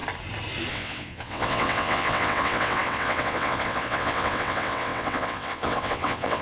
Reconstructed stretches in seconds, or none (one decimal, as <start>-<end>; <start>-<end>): 0.7-6.4